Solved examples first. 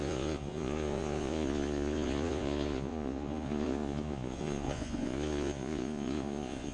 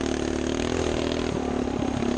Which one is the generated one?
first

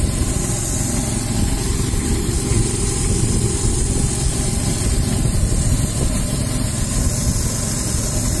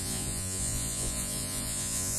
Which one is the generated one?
second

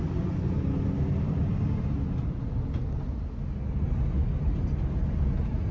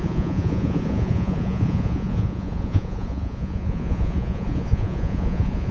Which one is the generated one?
second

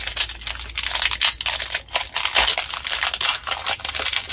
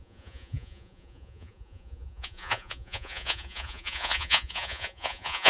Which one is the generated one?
second